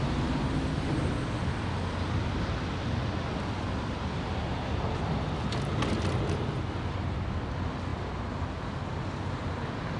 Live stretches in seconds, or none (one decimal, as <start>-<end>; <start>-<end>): 0.0-10.0